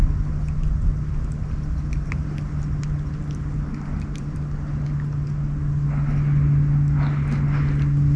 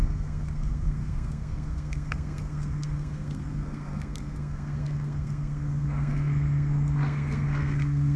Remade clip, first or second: second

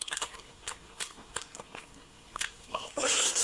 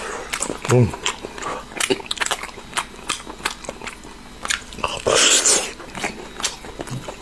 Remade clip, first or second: first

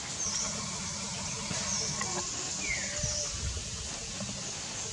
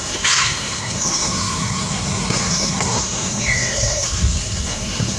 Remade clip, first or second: second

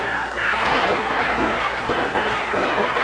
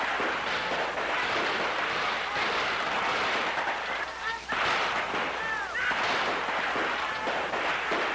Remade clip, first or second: first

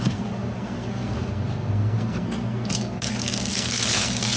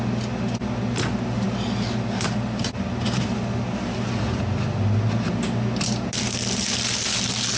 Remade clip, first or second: first